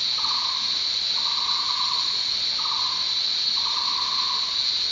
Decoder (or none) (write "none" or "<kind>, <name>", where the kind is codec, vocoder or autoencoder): none